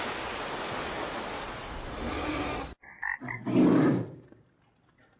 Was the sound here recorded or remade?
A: recorded